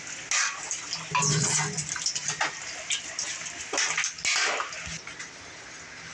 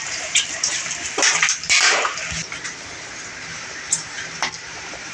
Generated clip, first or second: second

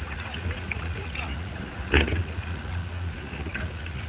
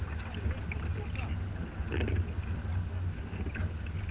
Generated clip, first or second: first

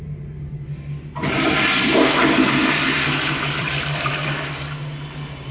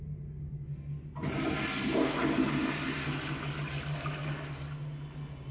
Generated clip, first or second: first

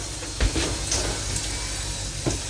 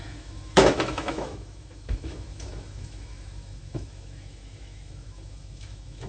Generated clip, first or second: second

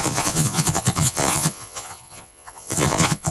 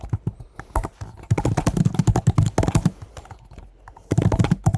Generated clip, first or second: first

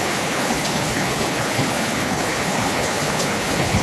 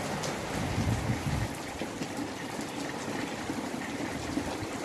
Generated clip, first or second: first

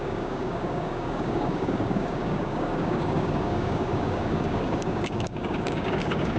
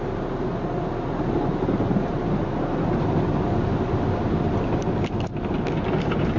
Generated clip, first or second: first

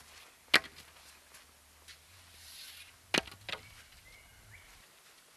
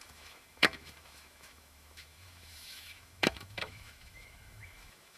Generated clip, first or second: second